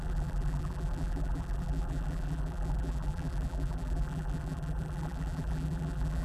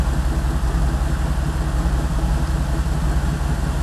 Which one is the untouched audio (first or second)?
second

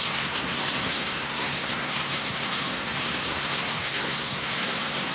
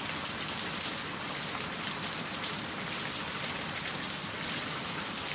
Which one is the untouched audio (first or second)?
second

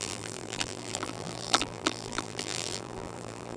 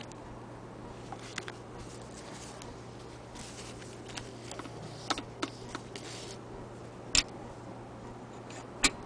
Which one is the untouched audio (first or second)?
second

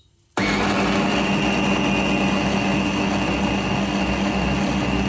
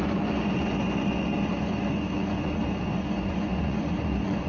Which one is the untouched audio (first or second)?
first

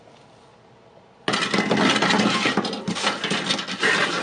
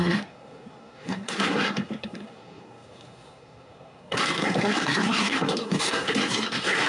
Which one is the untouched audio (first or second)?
first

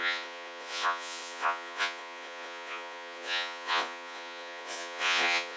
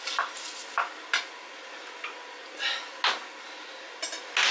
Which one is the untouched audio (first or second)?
second